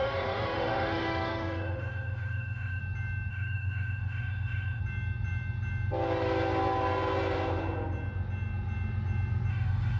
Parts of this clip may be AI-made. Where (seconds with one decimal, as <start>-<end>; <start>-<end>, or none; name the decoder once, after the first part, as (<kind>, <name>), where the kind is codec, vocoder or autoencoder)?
0.0-2.8 (autoencoder, DAC-VAE); 3.3-4.8; 9.5-10.0